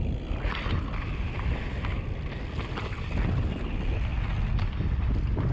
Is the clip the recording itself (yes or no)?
yes